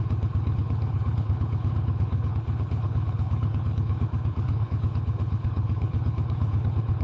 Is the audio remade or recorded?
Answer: remade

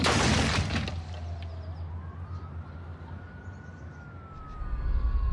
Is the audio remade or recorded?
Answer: recorded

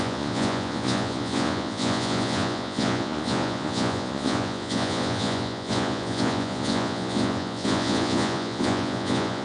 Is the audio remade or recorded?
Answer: remade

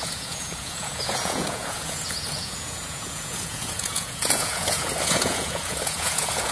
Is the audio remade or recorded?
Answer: remade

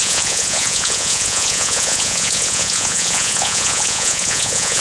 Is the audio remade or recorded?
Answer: remade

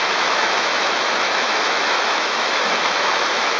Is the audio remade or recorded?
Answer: remade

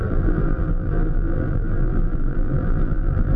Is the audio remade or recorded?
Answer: remade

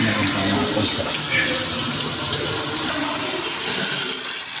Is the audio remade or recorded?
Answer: recorded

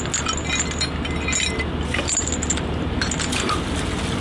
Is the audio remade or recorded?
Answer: recorded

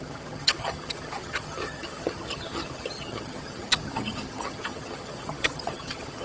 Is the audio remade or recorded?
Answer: remade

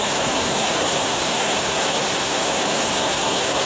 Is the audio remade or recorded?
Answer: remade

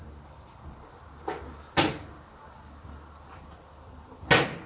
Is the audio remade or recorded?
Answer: recorded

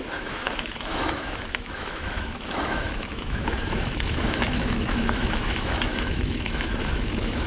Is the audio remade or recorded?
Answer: remade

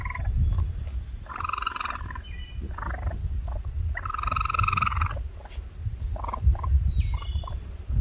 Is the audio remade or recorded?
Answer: recorded